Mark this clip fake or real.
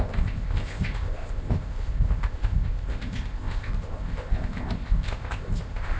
fake